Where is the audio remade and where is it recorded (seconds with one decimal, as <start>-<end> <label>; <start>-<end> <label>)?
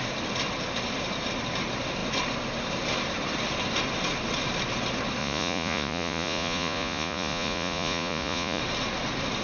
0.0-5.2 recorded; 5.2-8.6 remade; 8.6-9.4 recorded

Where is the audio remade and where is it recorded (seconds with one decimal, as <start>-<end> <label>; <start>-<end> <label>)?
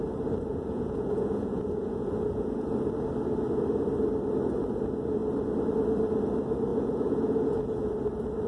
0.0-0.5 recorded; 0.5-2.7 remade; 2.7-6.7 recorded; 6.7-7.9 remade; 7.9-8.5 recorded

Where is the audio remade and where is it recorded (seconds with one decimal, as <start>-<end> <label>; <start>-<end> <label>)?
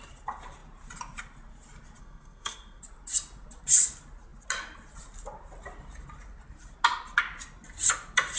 0.0-2.0 recorded; 2.0-2.8 remade; 2.8-8.4 recorded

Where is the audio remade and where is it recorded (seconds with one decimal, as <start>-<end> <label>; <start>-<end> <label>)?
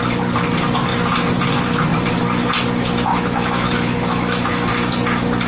0.0-3.1 recorded; 3.1-4.7 remade; 4.7-5.5 recorded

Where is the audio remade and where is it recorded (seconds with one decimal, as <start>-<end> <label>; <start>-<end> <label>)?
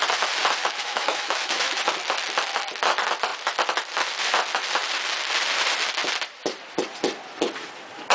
0.0-0.6 recorded; 0.6-1.8 remade; 1.8-8.1 recorded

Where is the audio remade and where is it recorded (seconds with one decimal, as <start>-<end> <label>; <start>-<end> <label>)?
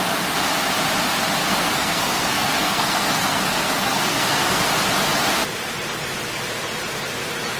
0.0-1.4 recorded; 1.4-4.7 remade; 4.7-7.6 recorded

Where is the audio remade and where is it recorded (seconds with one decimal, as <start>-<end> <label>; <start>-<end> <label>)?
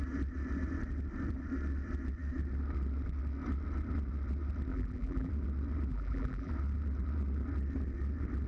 0.0-4.7 recorded; 4.7-5.3 remade; 5.3-5.9 recorded; 5.9-6.5 remade; 6.5-8.5 recorded